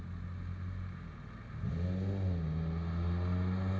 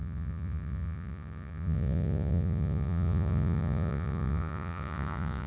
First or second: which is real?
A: first